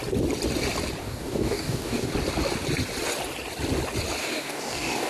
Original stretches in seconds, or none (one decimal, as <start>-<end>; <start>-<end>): 0.0-1.0; 2.1-4.2